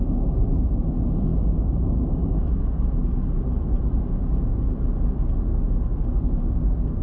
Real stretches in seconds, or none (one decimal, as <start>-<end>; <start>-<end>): 0.0-7.0